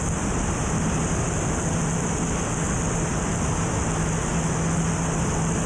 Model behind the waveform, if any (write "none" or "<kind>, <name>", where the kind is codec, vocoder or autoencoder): none